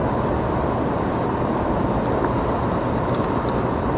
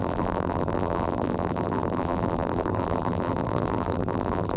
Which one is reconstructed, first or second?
second